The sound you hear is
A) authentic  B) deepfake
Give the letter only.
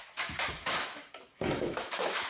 B